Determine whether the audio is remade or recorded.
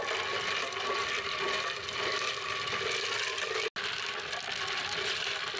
recorded